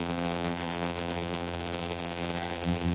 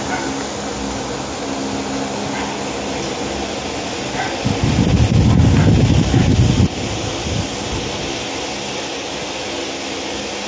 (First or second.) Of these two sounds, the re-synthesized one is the first